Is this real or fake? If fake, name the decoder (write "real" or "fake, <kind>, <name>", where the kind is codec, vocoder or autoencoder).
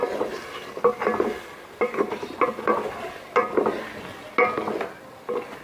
real